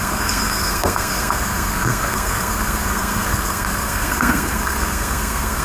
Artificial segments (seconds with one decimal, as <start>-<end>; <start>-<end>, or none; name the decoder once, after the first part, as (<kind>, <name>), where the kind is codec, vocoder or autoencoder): 0.0-5.6 (codec, SNAC)